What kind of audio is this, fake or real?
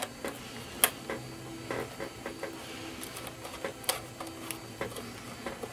real